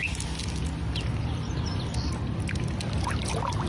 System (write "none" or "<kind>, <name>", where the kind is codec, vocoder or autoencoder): none